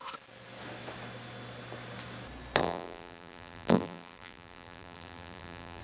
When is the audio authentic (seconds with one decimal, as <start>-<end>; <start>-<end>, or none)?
0.0-2.6